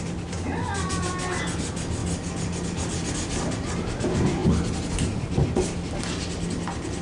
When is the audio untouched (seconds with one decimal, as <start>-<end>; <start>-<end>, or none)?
0.0-7.0